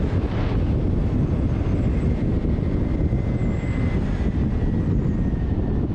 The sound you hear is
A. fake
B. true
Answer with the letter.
B